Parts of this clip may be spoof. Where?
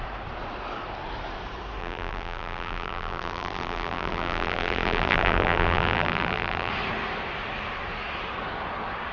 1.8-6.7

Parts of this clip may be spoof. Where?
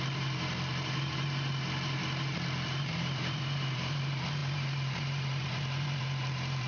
0.0-6.7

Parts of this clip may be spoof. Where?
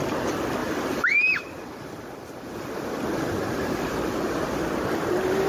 0.6-3.9